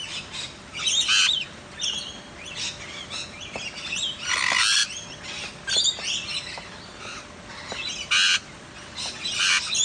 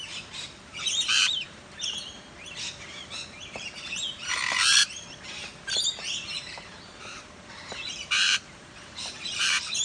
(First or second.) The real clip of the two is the first